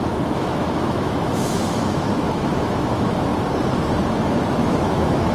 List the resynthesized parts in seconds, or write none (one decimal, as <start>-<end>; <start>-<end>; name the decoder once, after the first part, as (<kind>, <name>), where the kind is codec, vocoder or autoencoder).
0.0-3.3 (autoencoder, DAC-VAE); 4.1-5.3